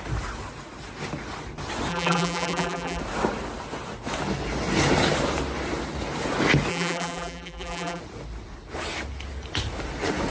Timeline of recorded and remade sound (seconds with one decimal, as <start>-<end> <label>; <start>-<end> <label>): 0.0-1.9 recorded; 1.9-3.0 remade; 3.0-6.7 recorded; 6.7-8.0 remade; 8.0-10.3 recorded